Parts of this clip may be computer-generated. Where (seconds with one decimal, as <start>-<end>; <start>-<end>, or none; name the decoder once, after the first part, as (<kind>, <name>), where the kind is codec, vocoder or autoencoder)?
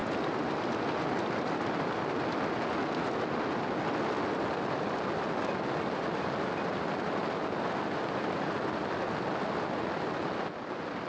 none